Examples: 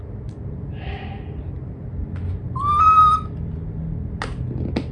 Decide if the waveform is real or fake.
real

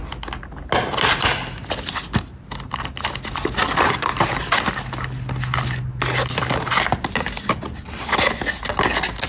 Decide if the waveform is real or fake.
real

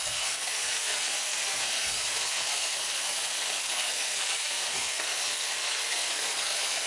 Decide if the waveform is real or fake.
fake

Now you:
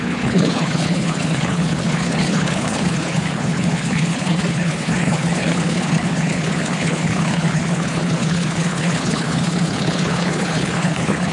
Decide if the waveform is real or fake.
fake